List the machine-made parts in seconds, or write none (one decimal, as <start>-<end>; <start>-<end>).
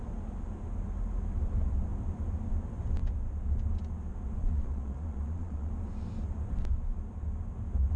4.4-5.7